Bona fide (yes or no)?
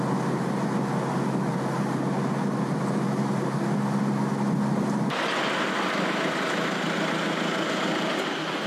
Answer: yes